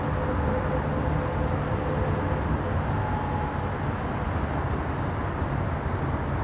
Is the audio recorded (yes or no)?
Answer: yes